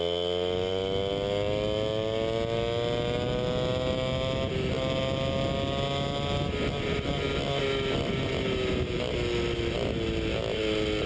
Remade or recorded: recorded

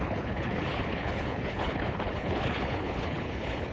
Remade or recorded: remade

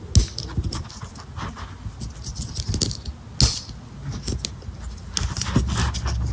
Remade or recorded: recorded